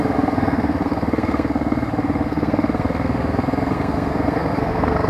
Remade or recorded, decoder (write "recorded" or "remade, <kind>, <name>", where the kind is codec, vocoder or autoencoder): remade, codec, SNAC